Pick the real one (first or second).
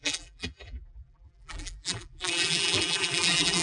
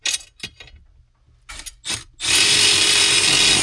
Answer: second